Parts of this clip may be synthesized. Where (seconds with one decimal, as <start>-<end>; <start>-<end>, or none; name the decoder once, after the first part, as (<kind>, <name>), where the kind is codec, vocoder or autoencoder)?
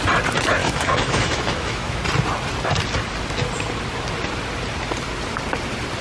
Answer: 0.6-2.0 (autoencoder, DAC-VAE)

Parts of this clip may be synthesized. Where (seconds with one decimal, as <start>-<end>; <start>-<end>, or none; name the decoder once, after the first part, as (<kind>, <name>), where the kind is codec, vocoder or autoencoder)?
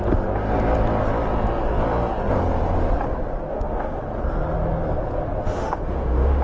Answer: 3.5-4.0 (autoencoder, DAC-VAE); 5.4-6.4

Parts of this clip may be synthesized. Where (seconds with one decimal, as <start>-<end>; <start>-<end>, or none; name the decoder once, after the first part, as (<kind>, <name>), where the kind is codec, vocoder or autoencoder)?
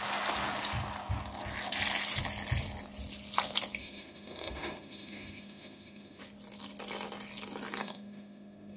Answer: 3.8-6.2 (autoencoder, DAC-VAE); 7.8-8.8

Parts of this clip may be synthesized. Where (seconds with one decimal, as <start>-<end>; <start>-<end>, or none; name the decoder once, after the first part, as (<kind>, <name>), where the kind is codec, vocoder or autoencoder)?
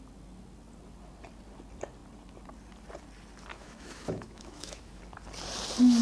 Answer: 3.5-5.0 (autoencoder, DAC-VAE)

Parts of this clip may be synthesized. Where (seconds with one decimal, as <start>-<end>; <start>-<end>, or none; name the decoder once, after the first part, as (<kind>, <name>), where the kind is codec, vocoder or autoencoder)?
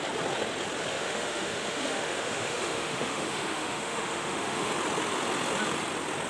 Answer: 0.9-4.7 (autoencoder, DAC-VAE)